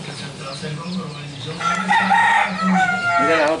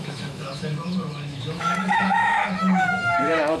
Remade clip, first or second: second